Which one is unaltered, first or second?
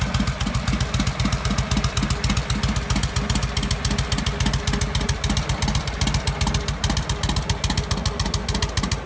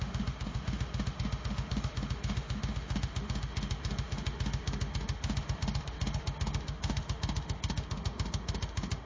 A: first